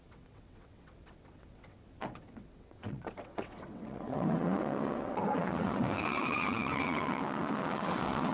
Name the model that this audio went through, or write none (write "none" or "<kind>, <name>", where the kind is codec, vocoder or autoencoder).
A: vocoder, WaveNeXt